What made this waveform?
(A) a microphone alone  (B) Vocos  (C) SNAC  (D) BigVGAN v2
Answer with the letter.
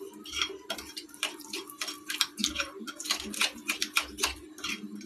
D